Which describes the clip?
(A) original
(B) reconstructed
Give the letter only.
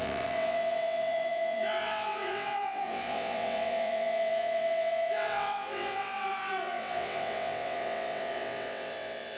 B